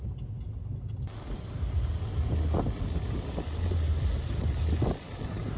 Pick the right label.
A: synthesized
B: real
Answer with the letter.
B